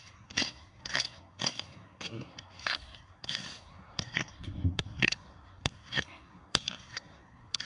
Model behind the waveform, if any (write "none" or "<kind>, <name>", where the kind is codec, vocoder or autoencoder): codec, SNAC